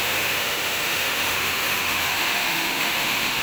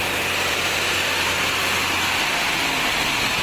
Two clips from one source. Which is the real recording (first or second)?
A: second